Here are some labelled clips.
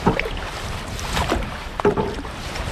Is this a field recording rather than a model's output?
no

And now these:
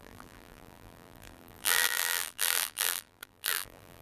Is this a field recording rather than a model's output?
no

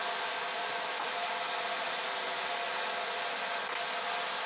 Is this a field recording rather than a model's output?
yes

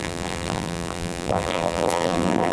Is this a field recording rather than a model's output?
no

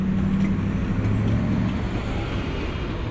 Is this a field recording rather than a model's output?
yes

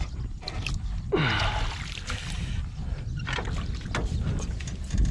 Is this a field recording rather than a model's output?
yes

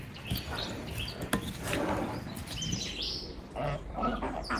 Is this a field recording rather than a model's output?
no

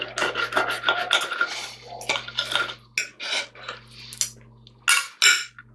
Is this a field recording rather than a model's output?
yes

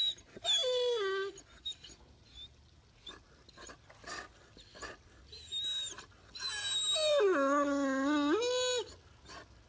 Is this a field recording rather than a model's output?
yes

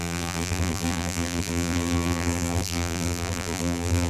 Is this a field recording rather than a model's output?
no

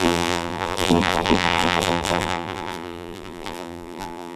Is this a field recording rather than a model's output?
no